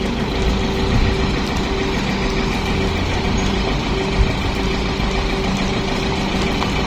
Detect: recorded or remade recorded